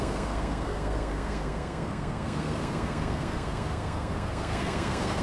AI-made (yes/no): yes